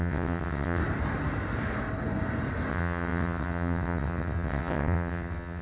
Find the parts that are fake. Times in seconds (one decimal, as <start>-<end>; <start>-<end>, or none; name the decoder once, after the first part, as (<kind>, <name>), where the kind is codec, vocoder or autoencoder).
0.0-0.8 (vocoder, WaveNeXt); 2.7-5.6